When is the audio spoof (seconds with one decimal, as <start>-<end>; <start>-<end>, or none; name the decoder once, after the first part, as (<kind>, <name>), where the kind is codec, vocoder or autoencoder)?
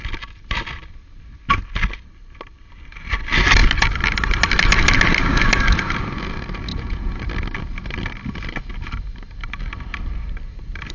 6.7-7.2 (vocoder, Vocos)